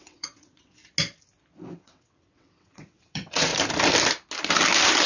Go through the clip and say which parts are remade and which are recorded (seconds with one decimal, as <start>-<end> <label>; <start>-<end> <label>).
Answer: 0.0-0.8 remade; 0.8-1.7 recorded; 1.7-3.5 remade; 3.5-5.1 recorded